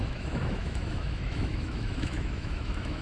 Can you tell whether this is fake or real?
fake